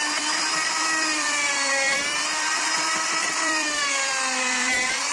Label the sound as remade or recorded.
remade